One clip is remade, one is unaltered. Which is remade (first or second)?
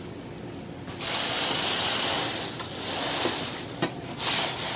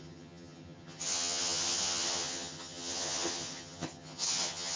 second